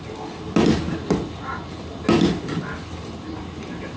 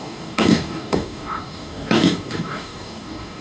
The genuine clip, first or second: first